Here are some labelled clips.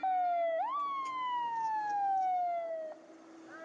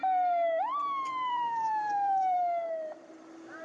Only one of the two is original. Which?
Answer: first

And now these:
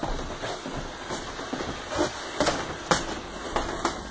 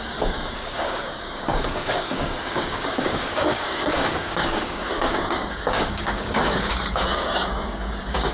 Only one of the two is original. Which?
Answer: first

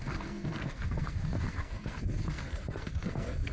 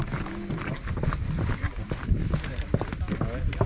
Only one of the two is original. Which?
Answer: second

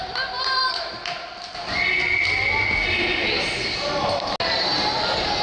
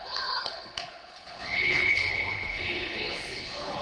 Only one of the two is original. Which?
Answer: first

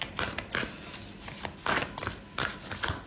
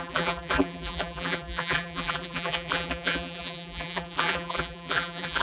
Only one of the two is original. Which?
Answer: first